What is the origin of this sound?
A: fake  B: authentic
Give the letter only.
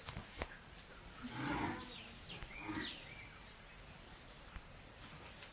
B